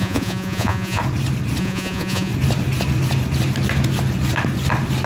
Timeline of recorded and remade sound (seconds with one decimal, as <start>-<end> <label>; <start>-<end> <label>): 0.0-1.0 remade; 1.0-1.6 recorded; 1.6-2.3 remade; 2.3-5.1 recorded